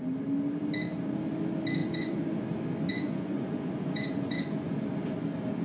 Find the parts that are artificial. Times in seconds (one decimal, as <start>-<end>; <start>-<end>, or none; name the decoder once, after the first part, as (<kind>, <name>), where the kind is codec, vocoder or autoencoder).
1.8-2.4 (vocoder, Vocos); 2.9-4.7